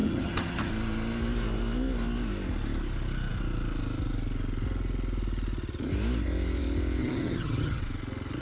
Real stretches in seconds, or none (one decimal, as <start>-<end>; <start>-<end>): 0.7-7.0; 7.8-8.4